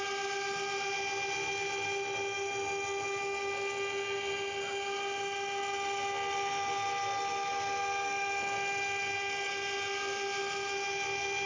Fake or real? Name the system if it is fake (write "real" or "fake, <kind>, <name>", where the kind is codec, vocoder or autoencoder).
real